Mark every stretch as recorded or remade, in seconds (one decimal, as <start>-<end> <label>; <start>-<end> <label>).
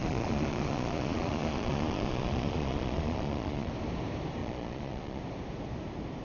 0.0-3.7 remade; 3.7-4.4 recorded; 4.4-5.2 remade; 5.2-6.2 recorded